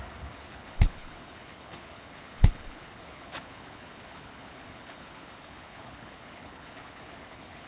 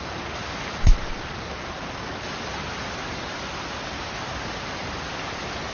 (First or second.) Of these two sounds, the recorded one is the second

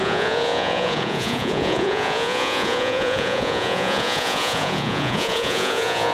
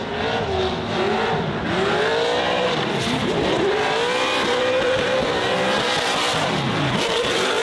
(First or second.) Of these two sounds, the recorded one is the second